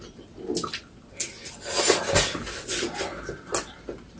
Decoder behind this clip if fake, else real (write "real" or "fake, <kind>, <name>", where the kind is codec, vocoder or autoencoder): real